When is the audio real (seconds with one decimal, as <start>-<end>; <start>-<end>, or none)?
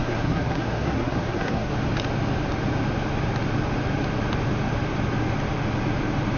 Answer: 1.7-6.4